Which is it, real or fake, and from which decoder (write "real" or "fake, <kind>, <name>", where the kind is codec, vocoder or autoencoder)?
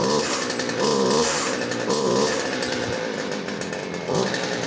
real